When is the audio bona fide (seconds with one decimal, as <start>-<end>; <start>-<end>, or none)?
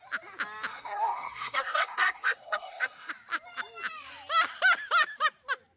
0.0-0.7; 3.1-5.8